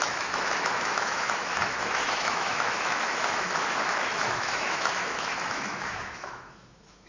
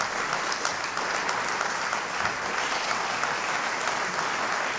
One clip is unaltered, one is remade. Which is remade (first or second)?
first